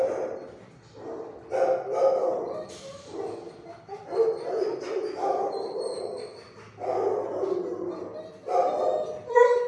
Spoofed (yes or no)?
no